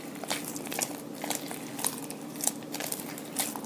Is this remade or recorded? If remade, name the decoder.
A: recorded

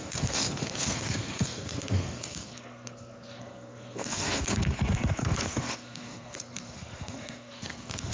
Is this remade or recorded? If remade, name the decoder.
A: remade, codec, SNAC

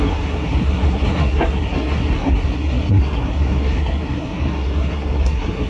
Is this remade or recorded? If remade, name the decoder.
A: remade, codec, SNAC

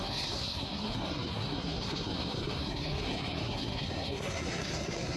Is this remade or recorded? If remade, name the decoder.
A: remade, codec, SNAC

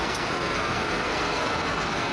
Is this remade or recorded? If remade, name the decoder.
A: remade, codec, SNAC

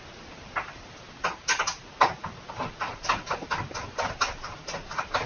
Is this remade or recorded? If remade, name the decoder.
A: recorded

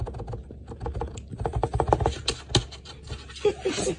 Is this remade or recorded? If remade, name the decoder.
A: recorded